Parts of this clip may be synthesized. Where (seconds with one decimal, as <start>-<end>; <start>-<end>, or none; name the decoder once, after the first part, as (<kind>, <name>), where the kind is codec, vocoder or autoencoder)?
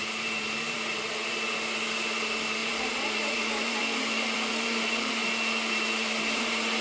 0.0-5.2 (vocoder, BigVGAN v2); 5.7-6.8